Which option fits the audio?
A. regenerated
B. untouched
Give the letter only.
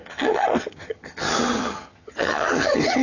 A